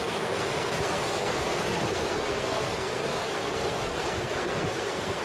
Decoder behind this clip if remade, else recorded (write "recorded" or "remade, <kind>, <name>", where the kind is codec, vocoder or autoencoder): remade, codec, SNAC